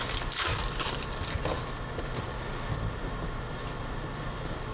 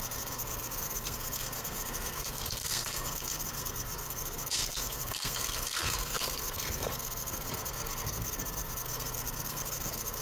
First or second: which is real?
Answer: first